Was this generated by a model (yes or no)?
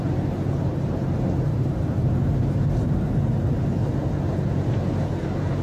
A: no